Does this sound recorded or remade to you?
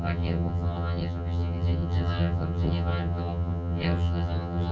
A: remade